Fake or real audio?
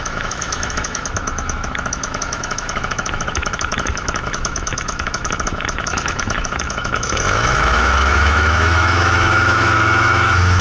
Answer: fake